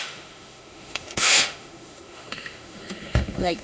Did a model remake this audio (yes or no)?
yes